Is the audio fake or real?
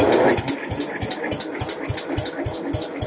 real